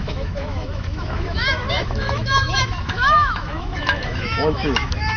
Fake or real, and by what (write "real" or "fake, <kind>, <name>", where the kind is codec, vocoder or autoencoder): fake, autoencoder, DAC-VAE